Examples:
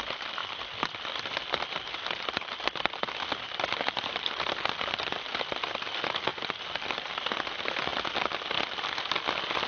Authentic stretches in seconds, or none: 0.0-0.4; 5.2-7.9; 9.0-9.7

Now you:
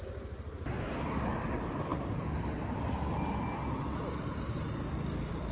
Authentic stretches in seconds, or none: 0.0-5.5

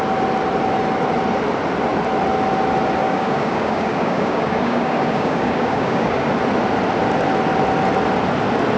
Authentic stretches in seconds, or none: 0.0-3.0; 6.3-8.8

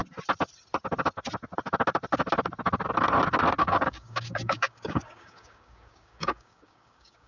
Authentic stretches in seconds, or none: 0.0-3.6